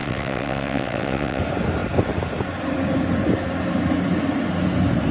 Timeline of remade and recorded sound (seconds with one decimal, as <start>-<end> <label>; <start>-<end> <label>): 0.0-1.4 remade; 1.4-5.1 recorded